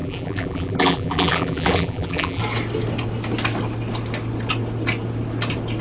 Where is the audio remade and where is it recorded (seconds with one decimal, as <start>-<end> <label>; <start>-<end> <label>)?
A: 0.0-2.4 remade; 2.4-5.8 recorded